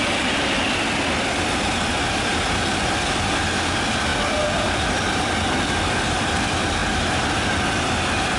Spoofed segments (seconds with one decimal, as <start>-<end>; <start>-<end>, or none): none